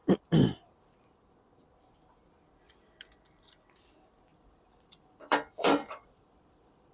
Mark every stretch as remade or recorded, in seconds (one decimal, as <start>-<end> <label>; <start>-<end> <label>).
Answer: 0.0-4.3 recorded; 4.3-6.9 remade